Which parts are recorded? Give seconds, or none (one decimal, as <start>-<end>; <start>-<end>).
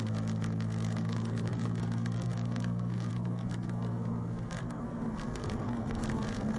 none